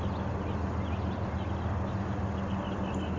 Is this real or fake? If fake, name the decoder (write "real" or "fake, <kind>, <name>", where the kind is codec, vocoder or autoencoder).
real